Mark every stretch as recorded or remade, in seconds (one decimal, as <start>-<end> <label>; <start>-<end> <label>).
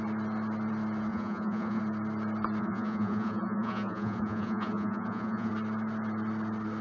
0.0-1.1 recorded; 1.1-1.8 remade; 1.8-2.6 recorded; 2.6-5.5 remade; 5.5-6.8 recorded